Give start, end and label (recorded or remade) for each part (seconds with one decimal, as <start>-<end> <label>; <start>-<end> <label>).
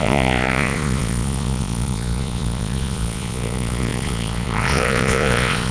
0.0-5.7 remade